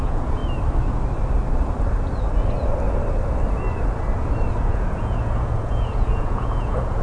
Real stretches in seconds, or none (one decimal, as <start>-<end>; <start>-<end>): 0.4-4.6